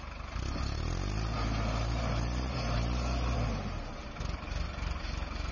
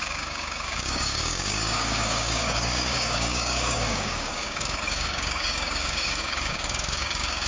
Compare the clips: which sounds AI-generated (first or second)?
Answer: second